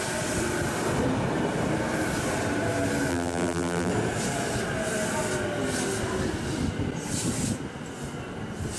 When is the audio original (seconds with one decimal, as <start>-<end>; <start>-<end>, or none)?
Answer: 0.0-3.1; 3.9-8.8